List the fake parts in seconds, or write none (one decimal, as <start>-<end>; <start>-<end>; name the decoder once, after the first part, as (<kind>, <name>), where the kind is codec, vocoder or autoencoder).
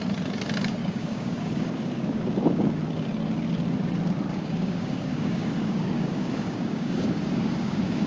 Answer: 0.8-2.8 (codec, DAC); 4.3-8.1